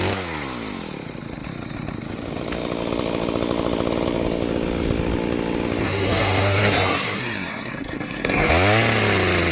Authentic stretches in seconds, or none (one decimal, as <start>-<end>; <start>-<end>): 0.0-5.8; 8.5-9.5